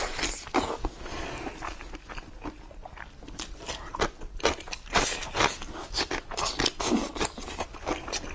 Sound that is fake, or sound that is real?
real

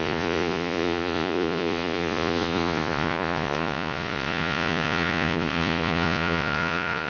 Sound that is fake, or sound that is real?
fake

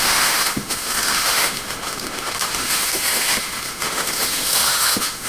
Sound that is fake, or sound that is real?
fake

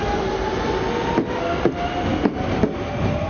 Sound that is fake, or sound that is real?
real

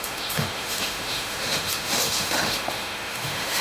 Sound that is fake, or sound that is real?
fake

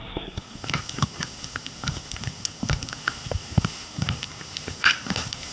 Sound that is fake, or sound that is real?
fake